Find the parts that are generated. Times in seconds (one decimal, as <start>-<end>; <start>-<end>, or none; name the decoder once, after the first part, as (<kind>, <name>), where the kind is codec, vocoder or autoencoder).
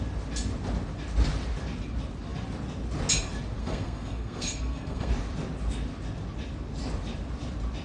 3.6-5.1 (codec, SNAC)